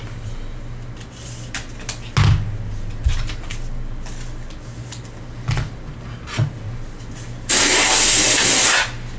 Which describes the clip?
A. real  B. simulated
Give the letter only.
A